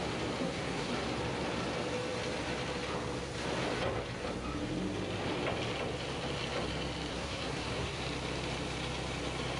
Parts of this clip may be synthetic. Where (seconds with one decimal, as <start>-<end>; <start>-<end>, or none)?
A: 0.4-0.9; 7.1-8.0